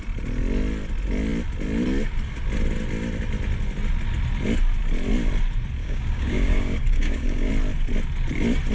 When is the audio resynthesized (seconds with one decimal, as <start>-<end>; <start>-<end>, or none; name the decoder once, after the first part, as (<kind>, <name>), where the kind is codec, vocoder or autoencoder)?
5.8-7.5 (codec, DAC)

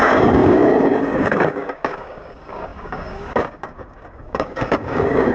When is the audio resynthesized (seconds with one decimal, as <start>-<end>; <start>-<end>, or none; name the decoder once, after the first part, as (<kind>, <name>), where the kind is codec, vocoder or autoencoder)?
0.0-5.3 (codec, DAC)

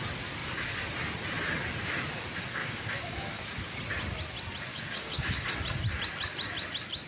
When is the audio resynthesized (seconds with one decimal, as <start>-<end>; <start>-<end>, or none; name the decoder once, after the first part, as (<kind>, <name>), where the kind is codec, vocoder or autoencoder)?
2.6-3.8 (codec, DAC); 4.7-5.5

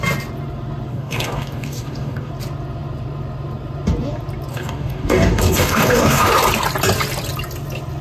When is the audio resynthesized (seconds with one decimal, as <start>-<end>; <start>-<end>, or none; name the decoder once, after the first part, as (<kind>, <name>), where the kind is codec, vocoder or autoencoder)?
0.9-2.3 (codec, DAC); 4.5-6.3

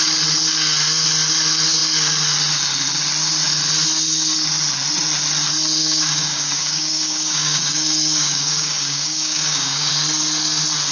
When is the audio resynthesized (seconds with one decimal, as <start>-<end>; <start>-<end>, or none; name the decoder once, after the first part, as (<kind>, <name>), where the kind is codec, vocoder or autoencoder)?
5.8-9.9 (codec, DAC)